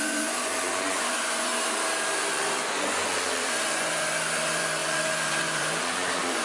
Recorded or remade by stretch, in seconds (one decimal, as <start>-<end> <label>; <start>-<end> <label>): 0.0-1.5 remade; 1.5-2.1 recorded; 2.1-6.4 remade